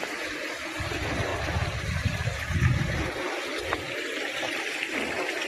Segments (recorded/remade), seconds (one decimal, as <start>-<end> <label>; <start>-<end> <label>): 0.0-5.5 recorded